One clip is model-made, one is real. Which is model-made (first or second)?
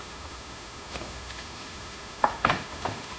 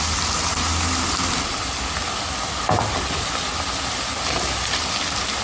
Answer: first